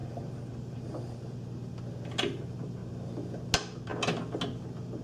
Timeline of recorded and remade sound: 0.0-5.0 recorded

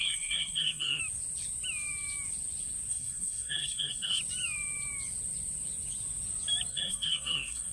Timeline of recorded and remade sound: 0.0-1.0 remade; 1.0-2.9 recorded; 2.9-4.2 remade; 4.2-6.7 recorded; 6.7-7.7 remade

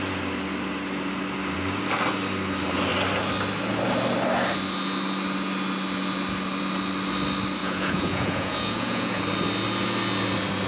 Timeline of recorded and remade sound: 0.0-7.6 recorded; 7.6-9.2 remade; 9.2-10.7 recorded

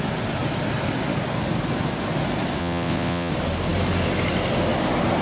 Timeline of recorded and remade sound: 0.0-2.6 recorded; 2.6-3.3 remade; 3.3-5.2 recorded